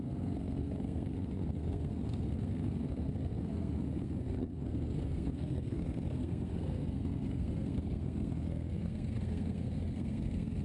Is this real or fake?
fake